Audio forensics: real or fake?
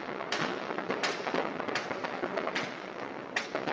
fake